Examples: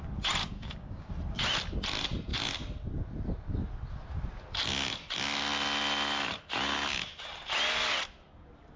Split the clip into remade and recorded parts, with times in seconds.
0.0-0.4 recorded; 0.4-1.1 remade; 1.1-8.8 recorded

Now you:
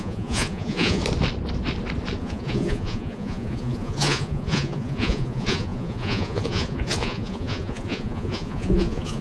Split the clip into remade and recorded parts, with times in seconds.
0.0-1.0 remade; 1.0-2.2 recorded; 2.2-9.2 remade

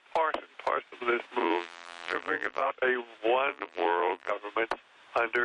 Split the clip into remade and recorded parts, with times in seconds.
0.0-1.4 recorded; 1.4-2.7 remade; 2.7-3.5 recorded; 3.5-4.3 remade; 4.3-5.4 recorded

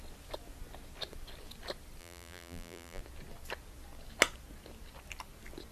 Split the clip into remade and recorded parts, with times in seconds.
0.0-2.0 recorded; 2.0-3.0 remade; 3.0-5.7 recorded

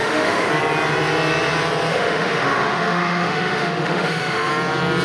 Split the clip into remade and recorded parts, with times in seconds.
0.0-0.5 remade; 0.5-1.9 recorded; 1.9-4.5 remade; 4.5-5.0 recorded

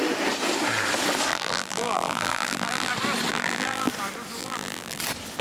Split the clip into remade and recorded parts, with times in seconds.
0.0-1.3 recorded; 1.3-2.9 remade; 2.9-3.3 recorded; 3.3-3.9 remade; 3.9-4.4 recorded; 4.4-5.0 remade; 5.0-5.4 recorded